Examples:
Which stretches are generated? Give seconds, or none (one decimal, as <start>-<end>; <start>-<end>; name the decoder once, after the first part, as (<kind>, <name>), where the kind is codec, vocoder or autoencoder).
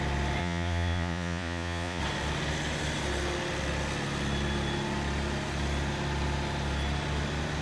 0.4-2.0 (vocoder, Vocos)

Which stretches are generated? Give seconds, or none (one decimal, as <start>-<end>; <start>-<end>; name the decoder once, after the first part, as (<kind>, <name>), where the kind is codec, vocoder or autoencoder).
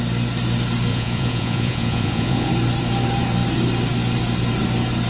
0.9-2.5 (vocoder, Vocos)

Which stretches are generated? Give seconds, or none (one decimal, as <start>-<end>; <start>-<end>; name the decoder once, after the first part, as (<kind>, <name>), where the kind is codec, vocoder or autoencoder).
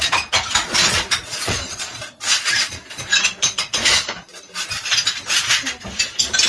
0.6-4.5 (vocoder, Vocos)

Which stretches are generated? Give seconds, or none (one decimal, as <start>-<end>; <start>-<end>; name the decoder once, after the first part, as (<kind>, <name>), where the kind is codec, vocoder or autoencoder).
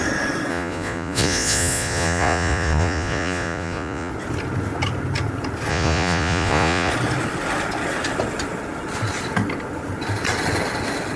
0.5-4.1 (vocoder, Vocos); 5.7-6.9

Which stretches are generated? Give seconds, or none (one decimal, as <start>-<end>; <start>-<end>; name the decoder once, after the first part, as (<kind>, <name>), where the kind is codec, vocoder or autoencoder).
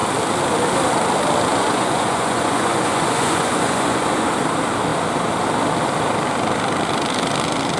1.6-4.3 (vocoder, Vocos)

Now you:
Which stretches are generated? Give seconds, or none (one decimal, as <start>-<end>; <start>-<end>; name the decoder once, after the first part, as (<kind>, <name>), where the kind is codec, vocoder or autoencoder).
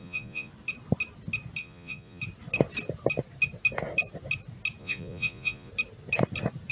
0.0-0.5 (vocoder, Vocos); 1.6-2.2; 4.8-5.7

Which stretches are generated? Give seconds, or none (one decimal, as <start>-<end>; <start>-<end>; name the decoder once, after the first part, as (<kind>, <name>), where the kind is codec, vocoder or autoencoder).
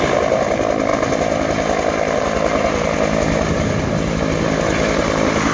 none